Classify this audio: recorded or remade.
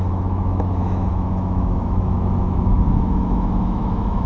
remade